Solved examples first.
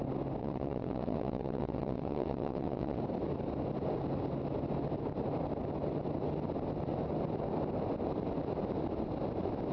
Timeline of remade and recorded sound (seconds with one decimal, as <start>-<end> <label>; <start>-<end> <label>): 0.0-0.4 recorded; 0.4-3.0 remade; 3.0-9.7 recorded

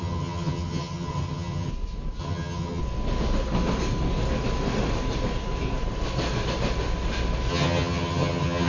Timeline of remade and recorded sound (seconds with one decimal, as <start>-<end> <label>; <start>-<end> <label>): 0.0-1.7 remade; 1.7-2.2 recorded; 2.2-2.8 remade; 2.8-7.5 recorded; 7.5-8.7 remade

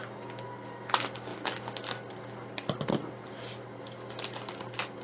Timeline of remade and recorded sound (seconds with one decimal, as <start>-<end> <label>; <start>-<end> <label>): 0.0-5.0 recorded

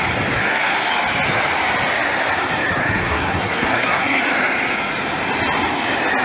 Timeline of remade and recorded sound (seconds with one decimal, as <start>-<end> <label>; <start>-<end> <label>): 0.0-0.4 recorded; 0.4-0.9 remade; 0.9-2.8 recorded; 2.8-4.2 remade; 4.2-6.2 recorded